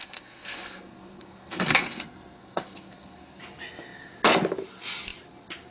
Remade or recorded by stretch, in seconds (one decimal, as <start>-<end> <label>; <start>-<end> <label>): 0.0-3.4 remade; 3.4-5.7 recorded